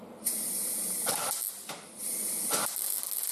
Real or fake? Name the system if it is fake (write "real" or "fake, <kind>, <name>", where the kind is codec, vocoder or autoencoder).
real